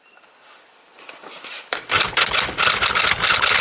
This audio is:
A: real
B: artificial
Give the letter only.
B